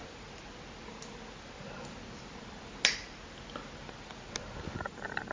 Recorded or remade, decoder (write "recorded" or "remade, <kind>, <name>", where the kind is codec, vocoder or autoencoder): recorded